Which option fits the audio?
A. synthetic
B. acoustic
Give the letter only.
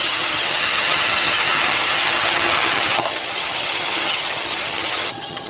A